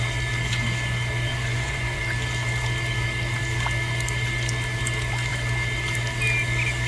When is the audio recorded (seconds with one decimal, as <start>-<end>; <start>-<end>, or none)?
0.0-1.3; 2.0-6.9